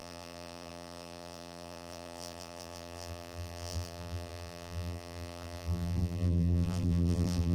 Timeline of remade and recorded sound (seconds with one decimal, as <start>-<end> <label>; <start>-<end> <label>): 0.0-7.5 remade